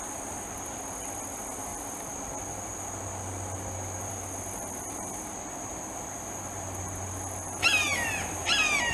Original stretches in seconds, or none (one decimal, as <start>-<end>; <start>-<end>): 0.0-8.9